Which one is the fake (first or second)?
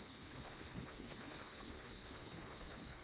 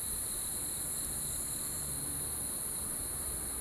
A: first